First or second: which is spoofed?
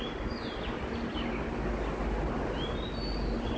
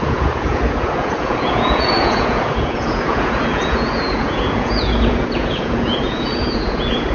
second